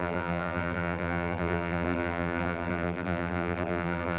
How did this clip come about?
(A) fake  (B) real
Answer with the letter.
A